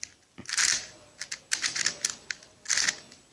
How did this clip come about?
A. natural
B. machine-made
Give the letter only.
A